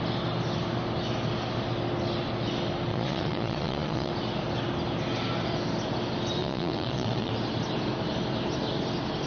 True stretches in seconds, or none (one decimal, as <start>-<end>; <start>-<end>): 0.0-2.9; 4.1-6.4; 7.3-9.3